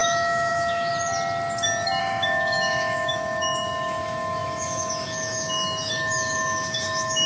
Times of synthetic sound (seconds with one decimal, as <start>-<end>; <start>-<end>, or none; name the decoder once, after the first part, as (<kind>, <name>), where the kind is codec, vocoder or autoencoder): 0.0-0.9 (autoencoder, DAC-VAE); 2.0-7.3